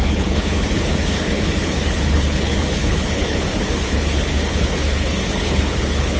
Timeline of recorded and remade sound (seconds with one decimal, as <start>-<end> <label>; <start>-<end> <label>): 0.0-6.2 remade